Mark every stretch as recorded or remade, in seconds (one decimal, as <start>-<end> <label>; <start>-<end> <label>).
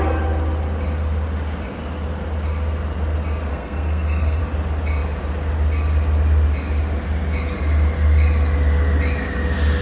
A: 0.0-3.5 recorded; 3.5-4.4 remade; 4.4-9.8 recorded